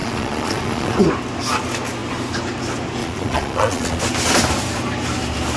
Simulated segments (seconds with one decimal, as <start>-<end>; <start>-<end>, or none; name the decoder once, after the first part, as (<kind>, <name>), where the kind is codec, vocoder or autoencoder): 0.0-1.0 (vocoder, Vocos); 3.0-4.0